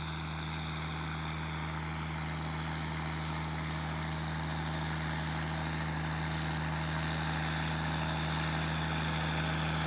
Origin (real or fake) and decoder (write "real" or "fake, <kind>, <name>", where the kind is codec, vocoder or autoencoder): real